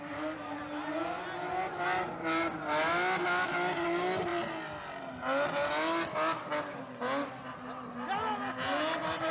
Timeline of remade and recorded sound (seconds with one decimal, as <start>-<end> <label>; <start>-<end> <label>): 0.0-9.3 recorded